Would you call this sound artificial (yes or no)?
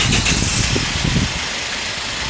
no